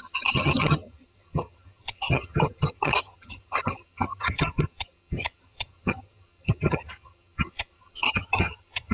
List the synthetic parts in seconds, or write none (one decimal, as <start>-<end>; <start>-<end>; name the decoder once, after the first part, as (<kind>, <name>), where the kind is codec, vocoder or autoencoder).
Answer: 0.0-8.9 (vocoder, HiFi-GAN)

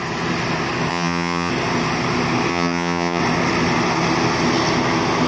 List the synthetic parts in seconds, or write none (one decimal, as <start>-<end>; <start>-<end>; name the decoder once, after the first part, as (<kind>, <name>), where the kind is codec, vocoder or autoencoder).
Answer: 0.9-1.5 (vocoder, HiFi-GAN); 2.5-3.2

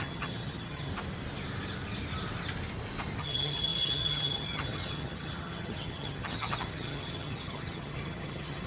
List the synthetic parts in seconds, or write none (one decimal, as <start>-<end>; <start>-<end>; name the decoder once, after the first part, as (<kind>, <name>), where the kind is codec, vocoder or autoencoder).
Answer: 0.0-0.9 (vocoder, HiFi-GAN); 3.2-8.7

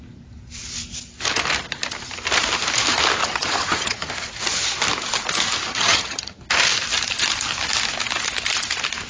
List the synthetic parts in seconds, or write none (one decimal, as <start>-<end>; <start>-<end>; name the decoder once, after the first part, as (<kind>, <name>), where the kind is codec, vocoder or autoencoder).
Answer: 3.2-4.1 (vocoder, HiFi-GAN); 5.7-6.4

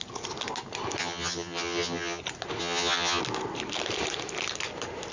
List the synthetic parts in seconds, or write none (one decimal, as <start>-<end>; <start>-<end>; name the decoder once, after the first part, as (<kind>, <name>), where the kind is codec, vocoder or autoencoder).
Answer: 1.0-2.2 (vocoder, HiFi-GAN); 2.6-3.2

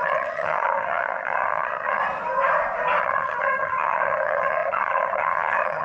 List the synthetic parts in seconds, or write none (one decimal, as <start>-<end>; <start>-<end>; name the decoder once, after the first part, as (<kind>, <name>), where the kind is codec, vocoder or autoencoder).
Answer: 0.0-2.0 (vocoder, HiFi-GAN); 3.0-5.8

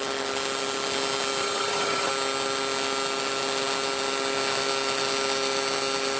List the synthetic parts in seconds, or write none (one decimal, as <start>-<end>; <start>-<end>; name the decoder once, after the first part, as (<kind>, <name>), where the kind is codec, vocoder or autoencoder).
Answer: 1.4-2.1 (vocoder, HiFi-GAN)

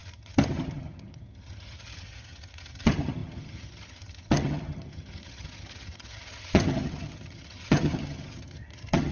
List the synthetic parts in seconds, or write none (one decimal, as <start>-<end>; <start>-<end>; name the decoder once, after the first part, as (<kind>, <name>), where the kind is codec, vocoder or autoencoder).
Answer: 0.0-9.1 (vocoder, HiFi-GAN)